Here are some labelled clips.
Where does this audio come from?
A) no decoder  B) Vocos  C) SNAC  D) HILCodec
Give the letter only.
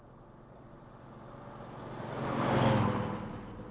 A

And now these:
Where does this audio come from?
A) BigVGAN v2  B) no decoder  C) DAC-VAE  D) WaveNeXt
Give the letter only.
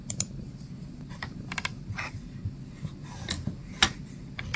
B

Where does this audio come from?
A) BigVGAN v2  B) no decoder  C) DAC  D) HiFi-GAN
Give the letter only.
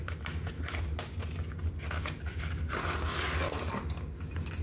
B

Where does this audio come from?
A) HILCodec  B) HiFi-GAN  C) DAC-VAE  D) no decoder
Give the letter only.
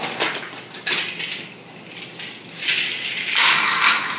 D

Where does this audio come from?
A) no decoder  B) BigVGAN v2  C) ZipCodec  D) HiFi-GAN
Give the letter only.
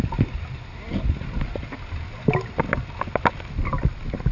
A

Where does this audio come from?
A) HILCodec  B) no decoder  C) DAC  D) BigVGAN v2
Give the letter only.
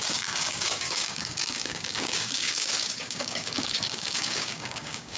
C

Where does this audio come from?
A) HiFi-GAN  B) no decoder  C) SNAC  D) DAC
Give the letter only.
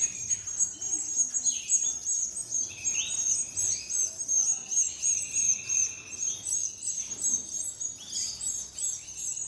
B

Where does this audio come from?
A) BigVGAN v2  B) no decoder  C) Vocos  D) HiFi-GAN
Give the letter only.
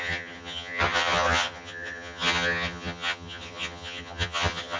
D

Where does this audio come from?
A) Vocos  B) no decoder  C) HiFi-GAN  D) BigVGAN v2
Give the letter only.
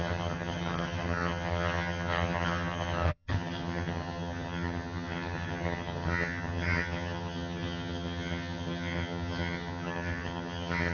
C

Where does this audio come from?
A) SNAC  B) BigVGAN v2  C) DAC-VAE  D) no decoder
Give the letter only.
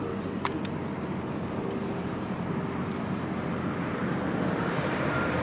B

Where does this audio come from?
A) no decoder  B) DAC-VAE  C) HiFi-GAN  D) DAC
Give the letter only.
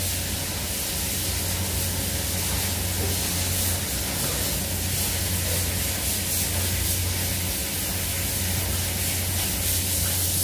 A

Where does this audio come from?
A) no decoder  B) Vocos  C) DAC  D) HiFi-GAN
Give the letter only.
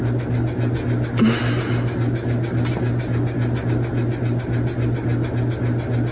A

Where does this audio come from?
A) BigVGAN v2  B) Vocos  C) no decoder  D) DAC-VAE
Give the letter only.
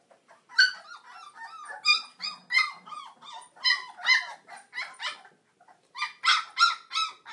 C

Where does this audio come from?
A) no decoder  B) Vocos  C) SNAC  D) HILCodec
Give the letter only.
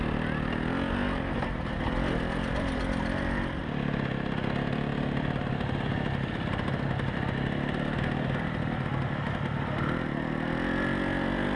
A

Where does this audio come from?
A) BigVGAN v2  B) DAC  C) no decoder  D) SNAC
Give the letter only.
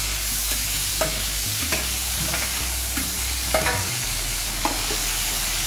B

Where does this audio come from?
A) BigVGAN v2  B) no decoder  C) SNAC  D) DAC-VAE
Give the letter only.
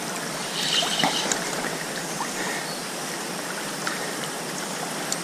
B